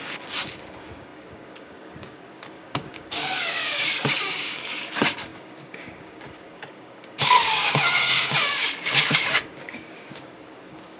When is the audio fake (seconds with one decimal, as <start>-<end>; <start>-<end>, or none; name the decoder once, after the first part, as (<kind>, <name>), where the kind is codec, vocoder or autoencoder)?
0.0-11.0 (codec, DAC)